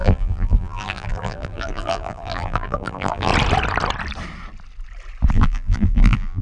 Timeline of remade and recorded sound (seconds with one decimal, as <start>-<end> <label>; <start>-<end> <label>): 0.0-3.3 remade; 3.3-5.3 recorded; 5.3-6.4 remade